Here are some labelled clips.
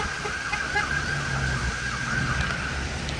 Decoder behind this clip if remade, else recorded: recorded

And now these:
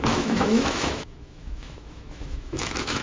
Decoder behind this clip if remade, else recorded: remade, autoencoder, DAC-VAE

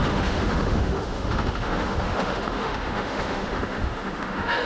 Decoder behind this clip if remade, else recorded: remade, autoencoder, DAC-VAE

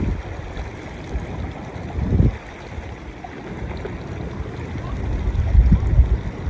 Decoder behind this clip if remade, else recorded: recorded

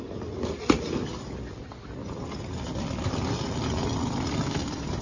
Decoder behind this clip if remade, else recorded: recorded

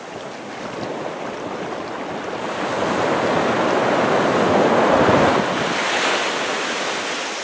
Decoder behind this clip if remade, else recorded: recorded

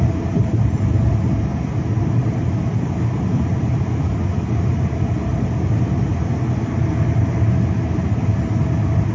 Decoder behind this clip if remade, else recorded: recorded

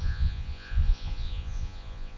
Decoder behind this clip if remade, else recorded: remade, vocoder, Vocos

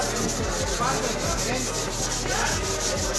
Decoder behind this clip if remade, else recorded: recorded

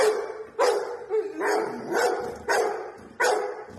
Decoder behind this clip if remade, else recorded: remade, vocoder, BigVGAN v2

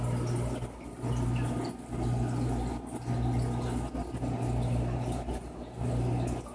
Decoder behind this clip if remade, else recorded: recorded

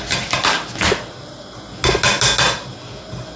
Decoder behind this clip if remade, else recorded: recorded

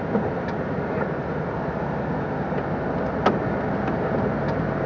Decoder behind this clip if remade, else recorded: recorded